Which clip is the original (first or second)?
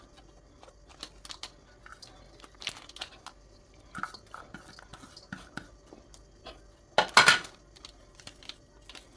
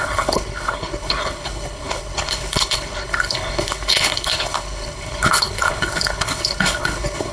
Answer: first